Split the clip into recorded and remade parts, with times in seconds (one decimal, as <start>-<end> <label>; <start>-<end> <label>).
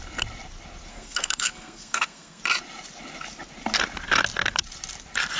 0.0-0.9 recorded; 0.9-2.4 remade; 2.4-5.4 recorded